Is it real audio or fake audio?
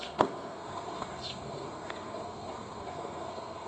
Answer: fake